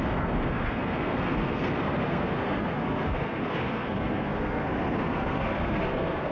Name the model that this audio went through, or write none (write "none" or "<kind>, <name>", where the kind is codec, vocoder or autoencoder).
codec, SNAC